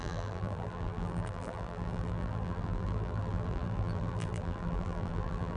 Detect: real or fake fake